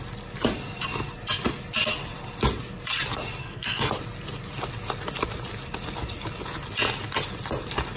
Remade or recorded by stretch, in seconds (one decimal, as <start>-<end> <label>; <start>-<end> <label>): 0.0-3.4 recorded; 3.4-3.9 remade; 3.9-8.0 recorded